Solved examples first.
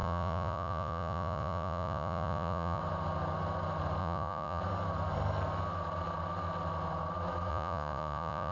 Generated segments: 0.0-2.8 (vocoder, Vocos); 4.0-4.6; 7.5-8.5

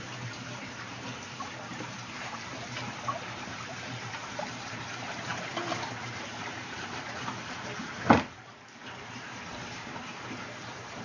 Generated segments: 0.0-11.0 (vocoder, BigVGAN v2)

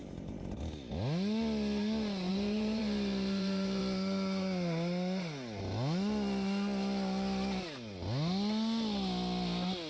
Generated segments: 0.0-0.6 (vocoder, BigVGAN v2); 2.3-3.8

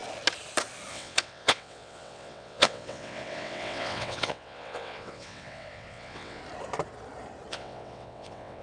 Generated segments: 0.9-6.4 (vocoder, WaveNeXt); 7.5-8.6

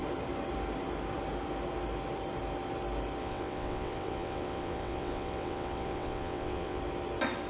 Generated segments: 3.2-6.8 (vocoder, WaveNeXt)

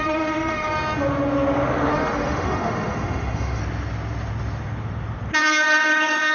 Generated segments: 0.0-0.7 (autoencoder, DAC-VAE); 1.9-3.6; 5.4-6.3